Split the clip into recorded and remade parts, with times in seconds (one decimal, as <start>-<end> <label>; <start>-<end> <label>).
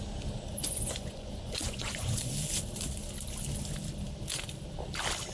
0.0-0.5 recorded; 0.5-2.3 remade; 2.3-5.3 recorded